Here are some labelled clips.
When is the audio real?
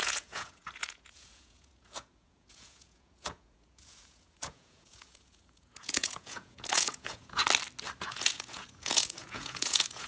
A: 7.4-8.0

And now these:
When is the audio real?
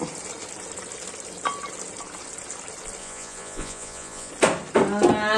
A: 0.0-3.0; 4.3-5.4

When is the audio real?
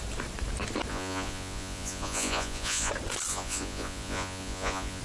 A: 0.0-0.9; 2.9-3.3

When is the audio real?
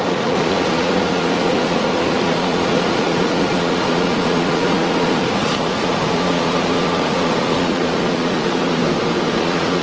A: 8.8-9.4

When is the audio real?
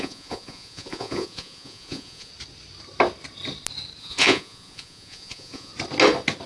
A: 2.3-4.0; 5.7-6.5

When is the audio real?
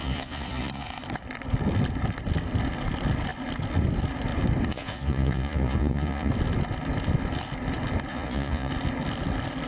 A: 0.9-4.7; 6.3-8.1; 8.7-9.7